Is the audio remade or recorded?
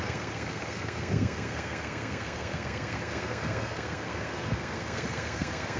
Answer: remade